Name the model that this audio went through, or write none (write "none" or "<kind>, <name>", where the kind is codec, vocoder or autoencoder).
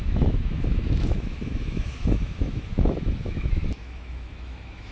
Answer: autoencoder, DAC-VAE